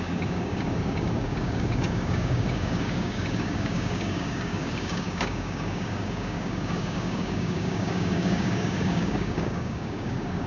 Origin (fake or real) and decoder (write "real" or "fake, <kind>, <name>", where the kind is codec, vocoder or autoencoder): fake, codec, DAC